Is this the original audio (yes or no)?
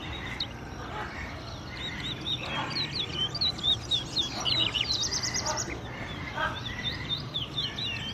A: no